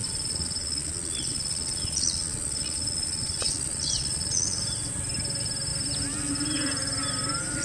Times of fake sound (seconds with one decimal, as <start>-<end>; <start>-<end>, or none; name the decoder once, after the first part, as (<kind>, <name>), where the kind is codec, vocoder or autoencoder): 0.0-4.6 (vocoder, Vocos)

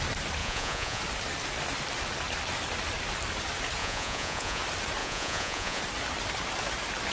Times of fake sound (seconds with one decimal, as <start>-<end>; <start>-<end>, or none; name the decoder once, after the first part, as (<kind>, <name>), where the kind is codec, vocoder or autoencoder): 0.4-1.0 (vocoder, Vocos); 3.8-4.6; 5.0-5.8

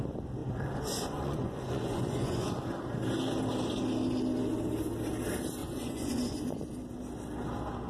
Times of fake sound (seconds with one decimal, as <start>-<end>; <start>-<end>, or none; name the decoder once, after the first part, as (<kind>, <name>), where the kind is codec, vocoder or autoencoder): 0.4-2.5 (vocoder, Vocos); 5.6-6.6

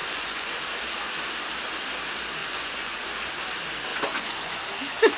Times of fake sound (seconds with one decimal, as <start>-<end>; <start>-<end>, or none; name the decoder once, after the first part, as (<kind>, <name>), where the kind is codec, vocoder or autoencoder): 0.0-0.5 (vocoder, Vocos); 2.4-3.1; 3.9-4.6

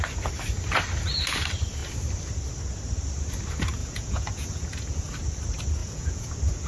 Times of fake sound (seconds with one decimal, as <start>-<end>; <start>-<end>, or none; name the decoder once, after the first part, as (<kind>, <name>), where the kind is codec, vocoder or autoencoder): 3.8-5.2 (vocoder, Vocos); 5.8-6.3

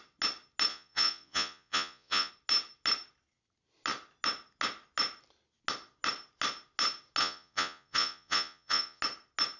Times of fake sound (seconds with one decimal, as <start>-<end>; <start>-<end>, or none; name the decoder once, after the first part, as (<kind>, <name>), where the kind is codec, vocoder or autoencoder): 0.7-2.3 (vocoder, Vocos); 7.2-9.0

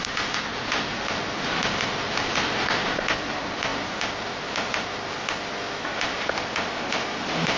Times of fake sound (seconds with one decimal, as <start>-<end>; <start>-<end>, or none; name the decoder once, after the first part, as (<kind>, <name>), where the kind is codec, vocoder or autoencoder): none